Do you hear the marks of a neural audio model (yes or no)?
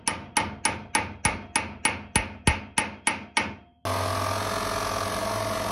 no